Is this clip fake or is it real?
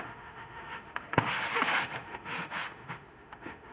fake